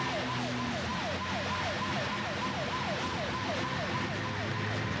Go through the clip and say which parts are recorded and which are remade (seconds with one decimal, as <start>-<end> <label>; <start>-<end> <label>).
0.0-5.0 recorded